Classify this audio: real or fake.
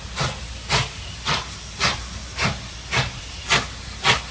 real